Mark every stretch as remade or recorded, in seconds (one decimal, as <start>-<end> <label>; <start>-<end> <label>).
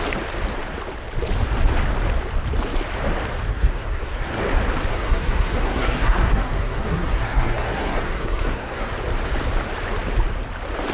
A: 0.0-3.5 recorded; 3.5-4.4 remade; 4.4-4.9 recorded; 4.9-8.9 remade; 8.9-10.9 recorded